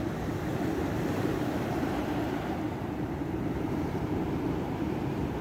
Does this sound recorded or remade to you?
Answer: remade